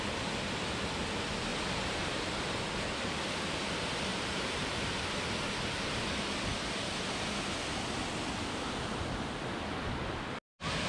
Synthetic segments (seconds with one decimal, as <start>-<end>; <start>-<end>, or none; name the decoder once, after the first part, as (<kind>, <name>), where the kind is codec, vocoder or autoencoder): 1.5-2.4 (vocoder, BigVGAN v2); 4.1-4.9